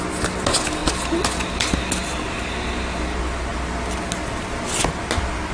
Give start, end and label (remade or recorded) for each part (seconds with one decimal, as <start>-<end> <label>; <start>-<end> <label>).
0.0-5.5 recorded

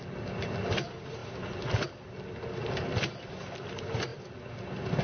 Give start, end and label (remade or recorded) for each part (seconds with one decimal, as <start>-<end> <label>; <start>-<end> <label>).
0.0-5.0 recorded

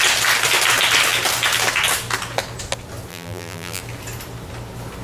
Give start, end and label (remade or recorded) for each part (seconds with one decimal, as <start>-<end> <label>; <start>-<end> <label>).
0.0-3.1 recorded; 3.1-3.8 remade; 3.8-5.0 recorded

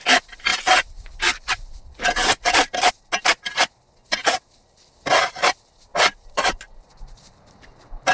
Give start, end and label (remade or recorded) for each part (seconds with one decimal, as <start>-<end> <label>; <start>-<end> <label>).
0.0-0.5 recorded; 0.5-2.9 remade; 2.9-5.9 recorded; 5.9-7.2 remade; 7.2-8.1 recorded

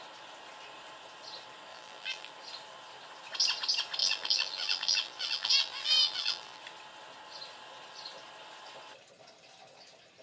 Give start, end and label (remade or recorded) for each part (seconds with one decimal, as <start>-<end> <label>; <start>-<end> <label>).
0.0-1.7 recorded; 1.7-2.3 remade; 2.3-4.0 recorded; 4.0-6.6 remade; 6.6-10.2 recorded

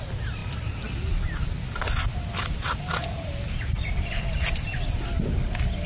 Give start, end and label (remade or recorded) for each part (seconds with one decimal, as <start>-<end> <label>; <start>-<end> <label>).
0.0-5.9 recorded